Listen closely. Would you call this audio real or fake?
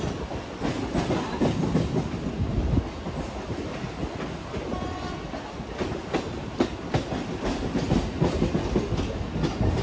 real